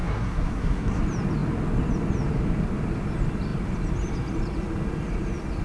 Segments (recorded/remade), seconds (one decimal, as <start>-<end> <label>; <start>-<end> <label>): 0.0-1.0 remade; 1.0-5.6 recorded